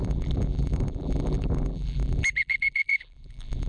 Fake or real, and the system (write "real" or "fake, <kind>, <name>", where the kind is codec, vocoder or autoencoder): fake, vocoder, BigVGAN v2